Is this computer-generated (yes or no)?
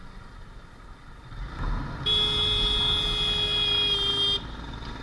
no